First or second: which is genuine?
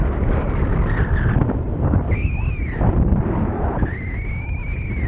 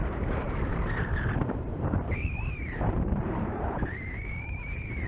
first